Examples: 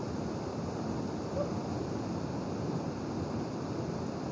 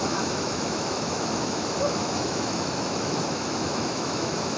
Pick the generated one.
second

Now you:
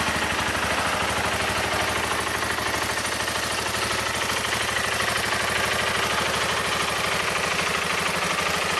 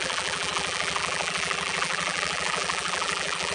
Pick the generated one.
second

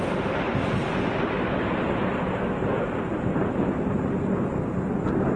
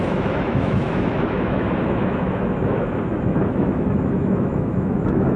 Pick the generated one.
second